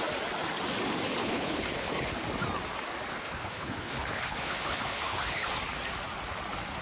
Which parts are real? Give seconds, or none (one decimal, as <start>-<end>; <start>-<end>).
0.0-1.2; 2.1-3.1; 5.5-6.8